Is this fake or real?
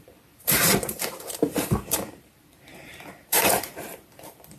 fake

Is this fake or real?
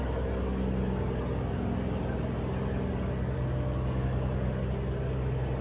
real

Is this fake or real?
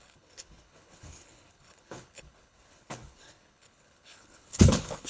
fake